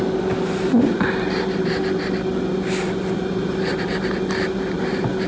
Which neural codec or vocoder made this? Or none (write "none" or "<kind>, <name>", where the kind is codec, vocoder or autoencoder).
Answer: none